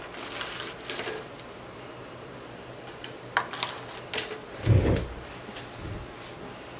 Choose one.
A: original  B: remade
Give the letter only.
A